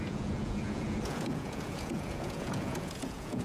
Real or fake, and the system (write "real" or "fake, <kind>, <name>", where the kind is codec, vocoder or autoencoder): fake, vocoder, Vocos